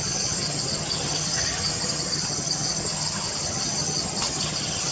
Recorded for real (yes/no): no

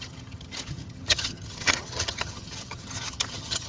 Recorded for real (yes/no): no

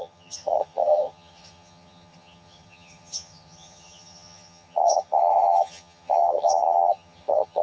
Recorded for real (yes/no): no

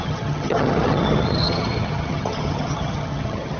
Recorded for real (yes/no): no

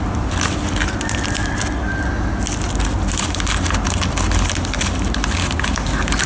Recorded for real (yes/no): yes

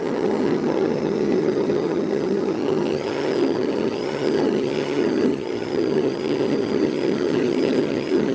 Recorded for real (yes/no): no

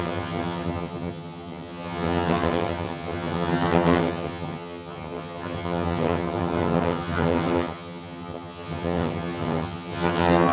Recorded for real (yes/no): no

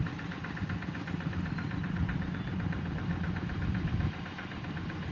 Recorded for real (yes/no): yes